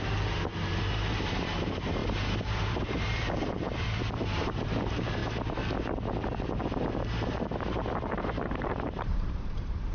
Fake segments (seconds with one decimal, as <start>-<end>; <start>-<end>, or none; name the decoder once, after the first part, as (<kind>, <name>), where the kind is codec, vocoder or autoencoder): 0.0-5.2 (vocoder, BigVGAN v2); 8.1-9.9